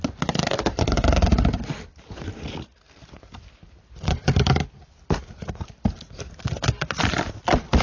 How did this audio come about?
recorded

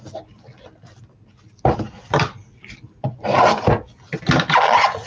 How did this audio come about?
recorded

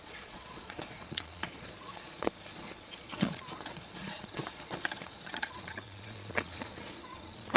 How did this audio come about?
remade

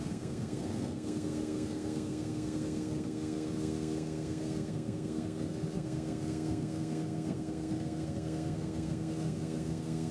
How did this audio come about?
remade